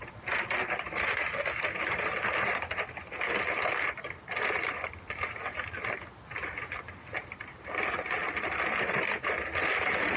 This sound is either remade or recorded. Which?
recorded